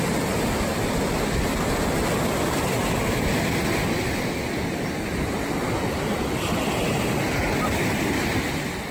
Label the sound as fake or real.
real